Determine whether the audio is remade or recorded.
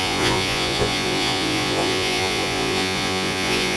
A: remade